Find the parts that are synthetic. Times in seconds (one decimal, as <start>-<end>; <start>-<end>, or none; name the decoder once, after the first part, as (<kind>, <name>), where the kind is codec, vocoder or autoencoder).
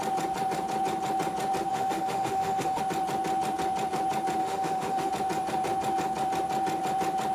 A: 1.7-2.8 (autoencoder, DAC-VAE); 4.4-5.1